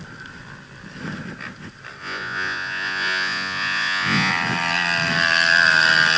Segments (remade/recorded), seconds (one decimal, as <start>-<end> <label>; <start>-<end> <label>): 0.0-2.0 recorded; 2.0-4.3 remade; 4.3-6.2 recorded